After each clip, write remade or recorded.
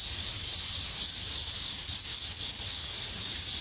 recorded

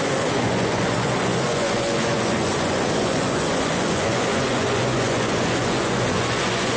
remade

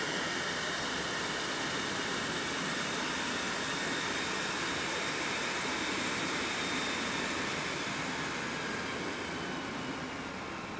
recorded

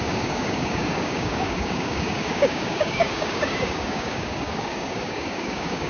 remade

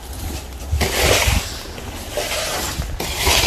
recorded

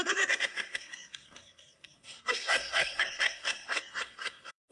remade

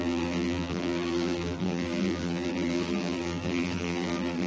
remade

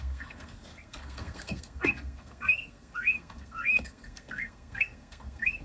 remade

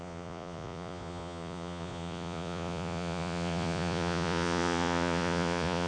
remade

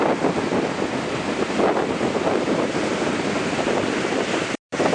recorded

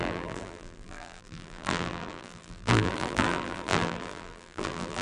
remade